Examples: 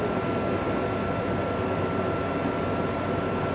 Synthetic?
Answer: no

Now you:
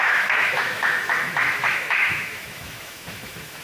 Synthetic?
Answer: yes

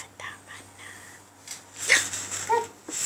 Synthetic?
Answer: no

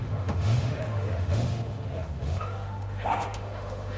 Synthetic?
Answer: yes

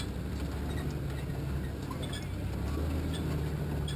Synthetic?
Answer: no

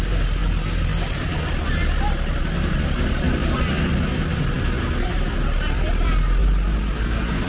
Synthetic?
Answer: no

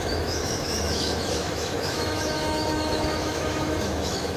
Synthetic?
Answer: yes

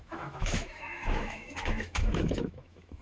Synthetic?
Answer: yes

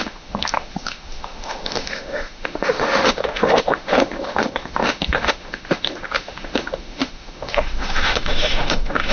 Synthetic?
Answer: yes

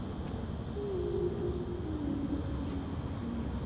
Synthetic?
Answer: no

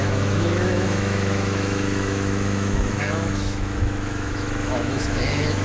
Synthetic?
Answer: yes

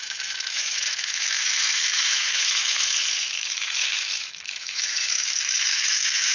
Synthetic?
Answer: yes